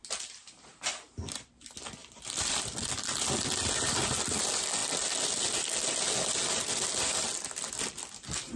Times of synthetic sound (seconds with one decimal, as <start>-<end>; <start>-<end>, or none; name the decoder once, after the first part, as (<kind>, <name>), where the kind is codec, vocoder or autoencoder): 2.0-2.9 (vocoder, BigVGAN v2)

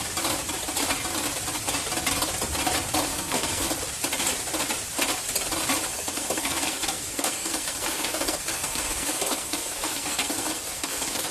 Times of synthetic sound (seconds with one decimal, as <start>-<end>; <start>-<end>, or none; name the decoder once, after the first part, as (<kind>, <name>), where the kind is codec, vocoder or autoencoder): 3.1-3.7 (codec, SNAC); 5.9-11.3